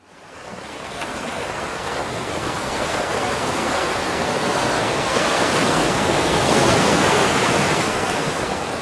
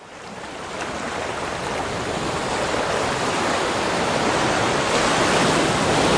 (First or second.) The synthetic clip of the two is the first